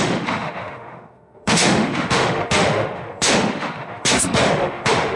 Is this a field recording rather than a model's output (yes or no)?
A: no